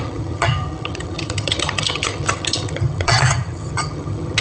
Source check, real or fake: fake